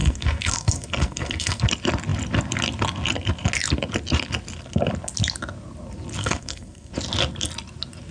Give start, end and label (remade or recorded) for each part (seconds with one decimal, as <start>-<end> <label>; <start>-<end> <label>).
0.0-1.6 remade; 1.6-6.2 recorded; 6.2-6.9 remade; 6.9-8.1 recorded